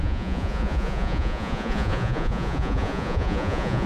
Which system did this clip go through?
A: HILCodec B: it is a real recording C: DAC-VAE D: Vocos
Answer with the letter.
D